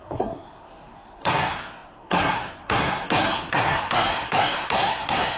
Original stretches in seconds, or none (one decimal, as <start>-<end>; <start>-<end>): none